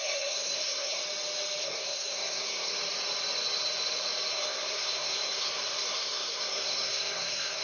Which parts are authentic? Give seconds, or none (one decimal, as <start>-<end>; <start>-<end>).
1.0-1.6; 2.7-4.3